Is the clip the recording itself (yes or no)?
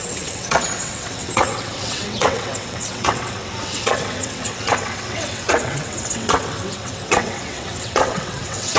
no